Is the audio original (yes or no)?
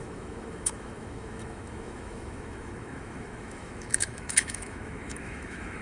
no